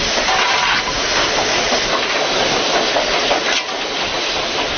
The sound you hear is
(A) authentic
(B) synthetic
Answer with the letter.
A